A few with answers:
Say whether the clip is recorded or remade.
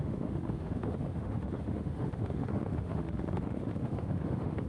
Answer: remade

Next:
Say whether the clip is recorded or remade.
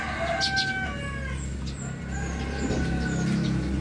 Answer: recorded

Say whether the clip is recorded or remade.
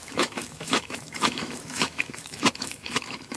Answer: remade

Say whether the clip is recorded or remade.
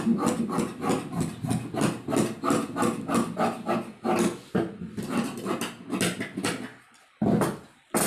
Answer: recorded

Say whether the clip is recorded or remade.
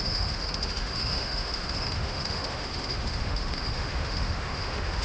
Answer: remade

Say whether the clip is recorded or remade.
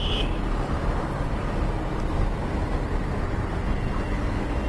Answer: recorded